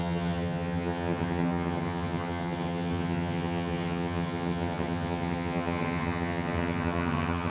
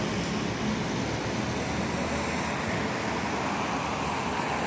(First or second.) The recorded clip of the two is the second